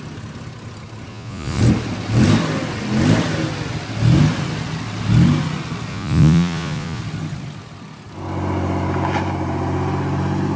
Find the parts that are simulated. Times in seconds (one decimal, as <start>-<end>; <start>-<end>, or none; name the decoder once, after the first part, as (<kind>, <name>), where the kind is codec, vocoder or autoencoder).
1.1-1.6 (vocoder, Vocos); 5.9-7.0